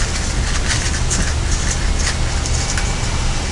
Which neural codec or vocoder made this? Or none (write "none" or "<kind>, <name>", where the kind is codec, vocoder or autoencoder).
none